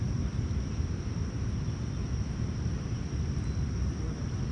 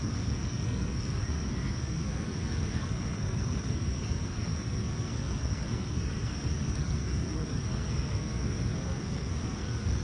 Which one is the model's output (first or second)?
second